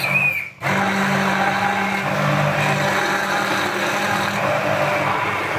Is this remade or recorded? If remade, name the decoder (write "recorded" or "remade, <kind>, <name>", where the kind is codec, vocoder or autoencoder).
recorded